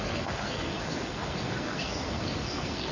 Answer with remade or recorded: remade